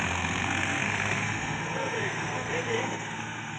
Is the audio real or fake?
fake